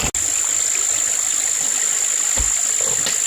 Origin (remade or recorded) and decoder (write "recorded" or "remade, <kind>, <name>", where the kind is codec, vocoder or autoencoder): recorded